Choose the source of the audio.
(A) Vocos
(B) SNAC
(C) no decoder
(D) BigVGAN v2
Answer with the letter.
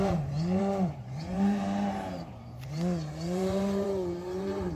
D